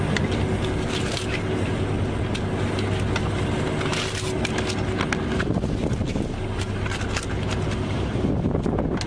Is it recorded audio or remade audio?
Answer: recorded